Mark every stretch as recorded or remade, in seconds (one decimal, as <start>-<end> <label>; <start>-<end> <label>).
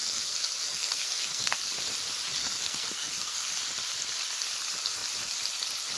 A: 0.0-1.7 remade; 1.7-2.4 recorded; 2.4-3.5 remade; 3.5-6.0 recorded